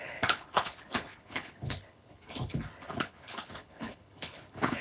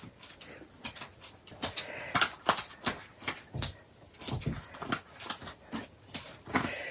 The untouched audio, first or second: second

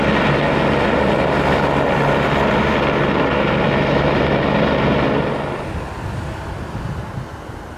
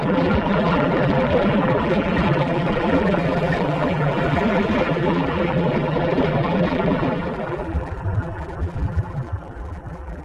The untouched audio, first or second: first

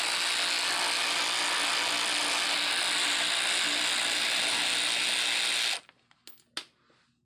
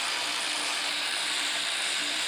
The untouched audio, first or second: first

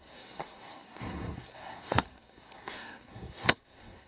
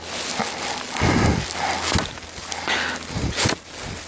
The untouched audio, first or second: second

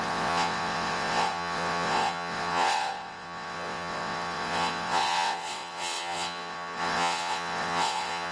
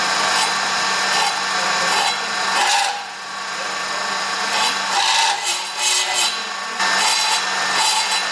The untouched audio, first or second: second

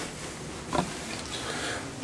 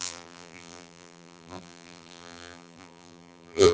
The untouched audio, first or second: first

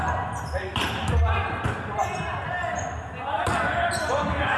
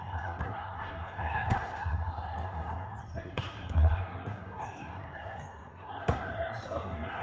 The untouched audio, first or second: first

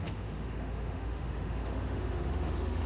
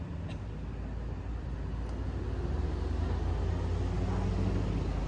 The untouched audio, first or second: second